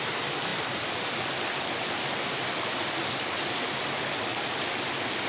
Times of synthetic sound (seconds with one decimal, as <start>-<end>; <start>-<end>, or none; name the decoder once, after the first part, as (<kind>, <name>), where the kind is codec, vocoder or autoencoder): none

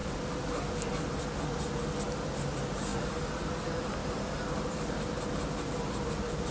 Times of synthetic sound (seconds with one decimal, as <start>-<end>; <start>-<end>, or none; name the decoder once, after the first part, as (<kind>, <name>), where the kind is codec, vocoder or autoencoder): 0.0-0.6 (vocoder, BigVGAN v2); 2.9-3.5; 4.0-6.5

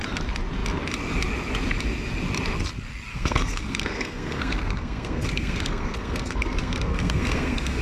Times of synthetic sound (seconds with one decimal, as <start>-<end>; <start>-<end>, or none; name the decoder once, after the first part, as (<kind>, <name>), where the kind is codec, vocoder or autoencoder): 3.1-7.8 (codec, SNAC)

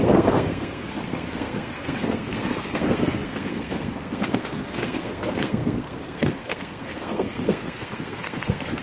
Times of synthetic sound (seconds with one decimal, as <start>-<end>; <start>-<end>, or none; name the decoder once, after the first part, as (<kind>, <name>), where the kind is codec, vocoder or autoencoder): 0.0-8.8 (codec, SNAC)

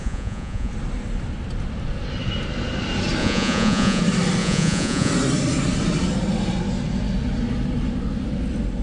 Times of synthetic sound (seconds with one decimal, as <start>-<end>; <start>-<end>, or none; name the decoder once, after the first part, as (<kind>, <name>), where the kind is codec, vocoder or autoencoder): 0.0-0.7 (vocoder, Vocos); 3.2-4.0; 4.4-5.1

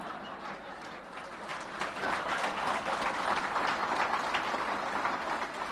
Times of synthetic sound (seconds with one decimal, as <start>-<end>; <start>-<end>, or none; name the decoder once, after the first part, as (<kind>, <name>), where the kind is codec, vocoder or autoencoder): 0.0-5.7 (vocoder, BigVGAN v2)

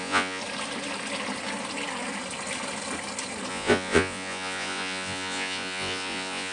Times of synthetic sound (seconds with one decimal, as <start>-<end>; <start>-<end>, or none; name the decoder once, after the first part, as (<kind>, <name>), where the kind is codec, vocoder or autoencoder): 0.0-0.4 (vocoder, Vocos); 3.5-6.5

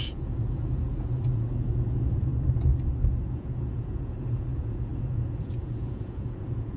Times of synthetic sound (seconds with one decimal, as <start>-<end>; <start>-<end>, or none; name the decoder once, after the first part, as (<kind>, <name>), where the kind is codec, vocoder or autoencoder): 0.0-2.3 (vocoder, Vocos); 3.3-6.8